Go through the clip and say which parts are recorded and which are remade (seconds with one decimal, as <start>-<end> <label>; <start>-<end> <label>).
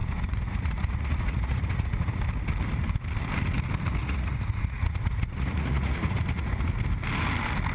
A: 0.0-2.2 remade; 2.2-4.0 recorded; 4.0-6.5 remade; 6.5-7.7 recorded